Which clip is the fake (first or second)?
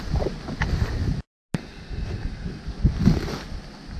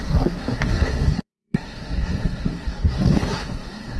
second